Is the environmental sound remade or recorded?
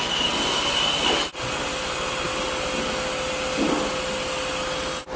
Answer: recorded